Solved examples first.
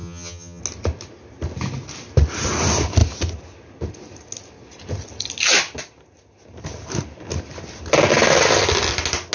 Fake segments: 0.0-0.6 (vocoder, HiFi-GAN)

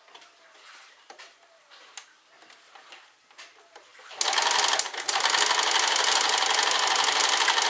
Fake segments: none

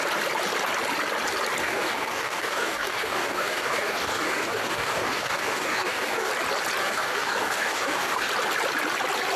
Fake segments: 1.6-6.3 (codec, DAC); 6.8-8.3